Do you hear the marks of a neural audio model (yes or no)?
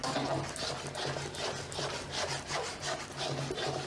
no